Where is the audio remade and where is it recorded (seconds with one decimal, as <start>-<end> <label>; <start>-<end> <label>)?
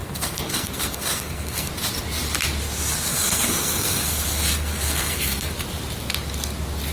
0.0-1.7 remade; 1.7-3.1 recorded; 3.1-5.5 remade; 5.5-6.9 recorded